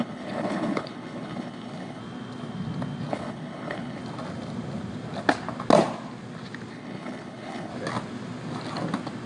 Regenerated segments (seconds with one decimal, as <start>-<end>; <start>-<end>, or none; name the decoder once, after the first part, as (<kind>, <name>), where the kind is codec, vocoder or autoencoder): 0.0-2.0 (codec, HILCodec); 3.1-4.0; 6.7-7.7